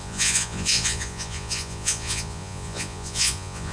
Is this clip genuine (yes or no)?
no